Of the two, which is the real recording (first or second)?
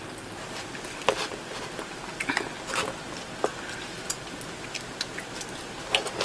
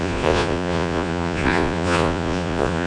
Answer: first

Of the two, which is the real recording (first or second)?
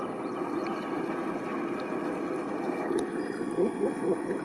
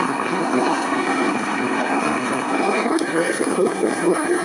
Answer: first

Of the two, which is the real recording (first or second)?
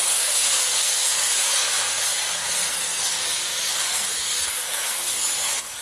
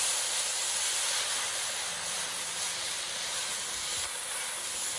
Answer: second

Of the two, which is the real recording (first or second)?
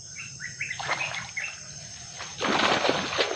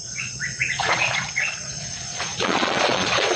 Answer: first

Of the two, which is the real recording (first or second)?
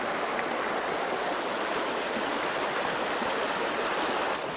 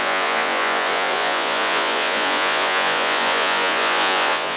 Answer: first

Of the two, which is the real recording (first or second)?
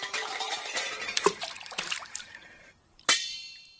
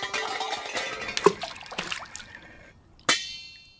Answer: second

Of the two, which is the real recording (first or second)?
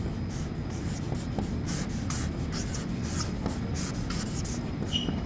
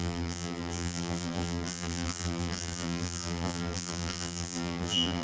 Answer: first